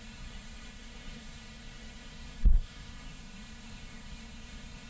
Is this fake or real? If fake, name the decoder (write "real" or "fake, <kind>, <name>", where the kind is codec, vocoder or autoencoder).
fake, codec, SNAC